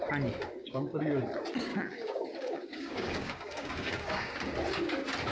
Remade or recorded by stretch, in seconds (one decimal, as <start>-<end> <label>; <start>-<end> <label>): 0.0-0.6 recorded; 0.6-1.2 remade; 1.2-1.7 recorded; 1.7-4.3 remade; 4.3-5.3 recorded

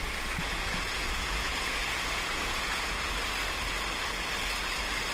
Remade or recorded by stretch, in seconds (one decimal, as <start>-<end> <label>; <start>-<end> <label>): 0.0-2.9 remade; 2.9-5.1 recorded

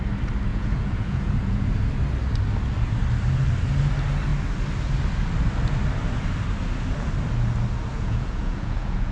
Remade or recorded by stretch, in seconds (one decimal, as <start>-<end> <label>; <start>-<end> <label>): 0.0-0.5 recorded; 0.5-1.7 remade; 1.7-7.9 recorded; 7.9-9.1 remade

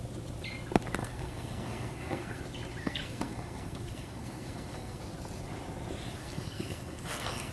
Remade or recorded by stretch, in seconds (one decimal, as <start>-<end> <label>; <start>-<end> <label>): 0.0-1.0 recorded; 1.0-2.4 remade; 2.4-2.8 recorded; 2.8-5.0 remade; 5.0-6.2 recorded; 6.2-7.5 remade

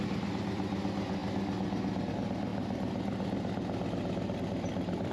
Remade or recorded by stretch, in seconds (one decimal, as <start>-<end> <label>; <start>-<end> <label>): 0.0-5.1 recorded